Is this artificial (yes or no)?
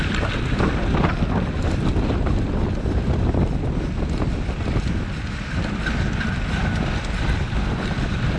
no